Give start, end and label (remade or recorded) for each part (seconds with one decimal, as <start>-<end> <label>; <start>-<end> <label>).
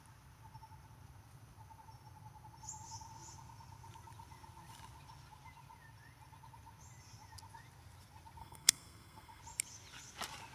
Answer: 0.0-8.4 recorded; 8.4-9.4 remade; 9.4-10.5 recorded